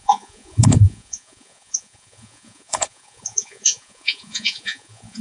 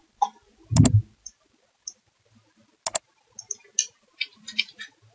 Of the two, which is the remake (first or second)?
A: first